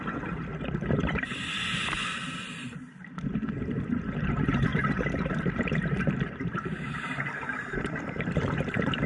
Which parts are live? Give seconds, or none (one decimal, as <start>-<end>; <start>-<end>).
0.5-1.0